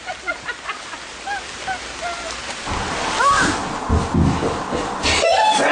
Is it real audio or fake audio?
real